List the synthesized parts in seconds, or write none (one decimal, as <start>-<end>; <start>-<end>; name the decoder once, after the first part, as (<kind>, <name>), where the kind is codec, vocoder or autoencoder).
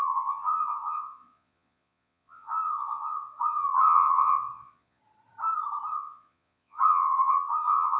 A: 0.0-5.0 (vocoder, Vocos); 5.9-8.0